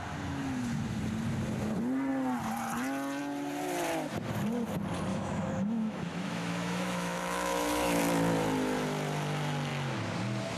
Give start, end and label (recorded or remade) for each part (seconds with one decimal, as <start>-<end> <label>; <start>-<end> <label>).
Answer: 0.0-5.1 recorded; 5.1-8.0 remade; 8.0-10.6 recorded